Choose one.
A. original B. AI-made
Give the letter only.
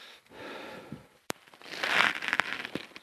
B